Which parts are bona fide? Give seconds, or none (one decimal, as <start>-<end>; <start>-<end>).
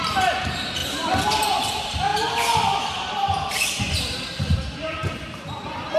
0.8-1.4